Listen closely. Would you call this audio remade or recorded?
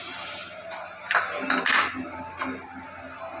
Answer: recorded